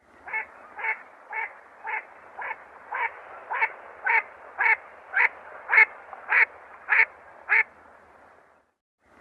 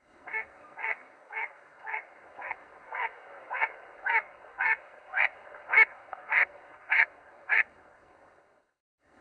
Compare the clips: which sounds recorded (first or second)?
first